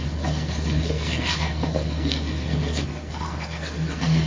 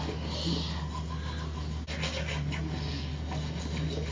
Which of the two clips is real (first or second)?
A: second